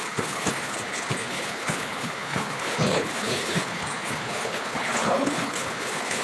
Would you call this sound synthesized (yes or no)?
yes